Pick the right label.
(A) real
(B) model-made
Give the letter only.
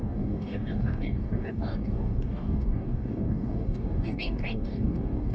B